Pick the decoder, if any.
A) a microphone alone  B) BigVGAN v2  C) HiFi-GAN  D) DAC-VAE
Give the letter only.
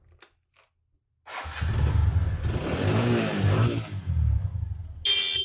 A